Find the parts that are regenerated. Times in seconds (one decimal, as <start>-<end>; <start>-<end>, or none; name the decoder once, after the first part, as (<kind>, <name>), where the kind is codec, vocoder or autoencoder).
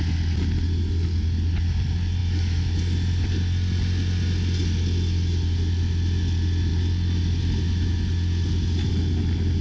2.2-2.8 (autoencoder, DAC-VAE)